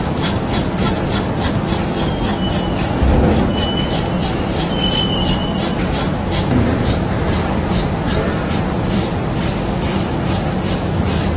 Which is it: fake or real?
fake